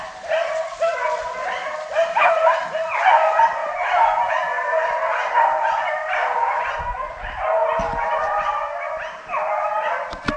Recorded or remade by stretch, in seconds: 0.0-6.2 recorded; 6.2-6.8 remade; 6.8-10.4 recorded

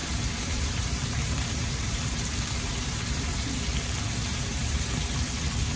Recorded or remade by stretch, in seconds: 0.0-3.5 remade; 3.5-4.3 recorded; 4.3-5.0 remade; 5.0-5.8 recorded